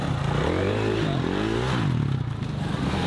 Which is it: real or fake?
real